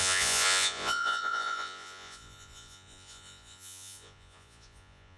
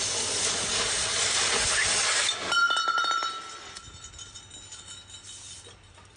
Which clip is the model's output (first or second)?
first